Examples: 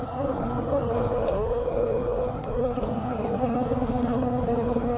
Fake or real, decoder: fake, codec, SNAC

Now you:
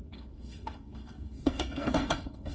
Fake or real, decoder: fake, codec, SNAC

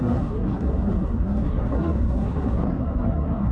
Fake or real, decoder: fake, codec, SNAC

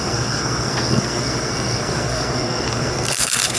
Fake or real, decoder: fake, codec, SNAC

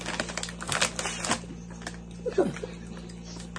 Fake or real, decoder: real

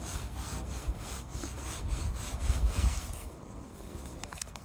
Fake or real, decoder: fake, codec, SNAC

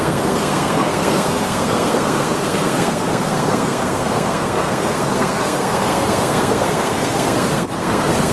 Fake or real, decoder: fake, codec, SNAC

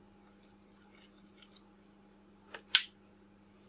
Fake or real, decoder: real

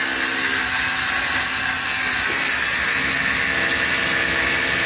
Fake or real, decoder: real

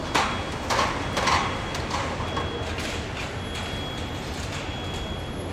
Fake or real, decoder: real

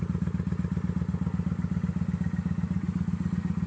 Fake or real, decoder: real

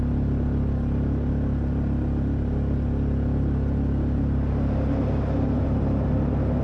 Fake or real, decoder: real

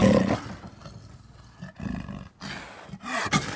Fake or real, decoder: real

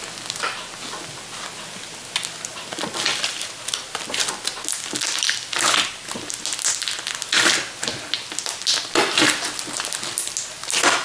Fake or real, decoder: real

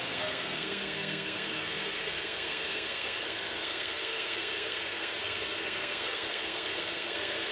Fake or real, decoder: fake, codec, SNAC